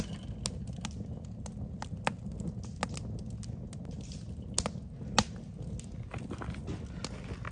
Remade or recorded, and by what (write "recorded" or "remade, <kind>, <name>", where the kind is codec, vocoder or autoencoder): recorded